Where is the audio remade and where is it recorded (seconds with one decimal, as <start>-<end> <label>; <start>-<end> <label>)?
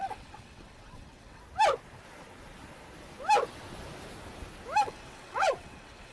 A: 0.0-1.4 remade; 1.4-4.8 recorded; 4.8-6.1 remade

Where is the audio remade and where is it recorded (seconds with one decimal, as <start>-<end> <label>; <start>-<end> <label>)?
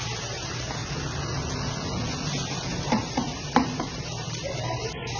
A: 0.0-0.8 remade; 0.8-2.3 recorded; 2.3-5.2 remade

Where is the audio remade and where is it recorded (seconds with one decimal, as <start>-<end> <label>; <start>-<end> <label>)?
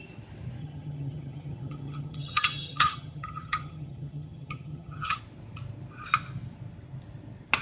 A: 0.0-0.6 recorded; 0.6-5.2 remade; 5.2-7.6 recorded